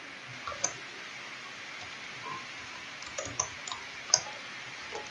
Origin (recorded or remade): recorded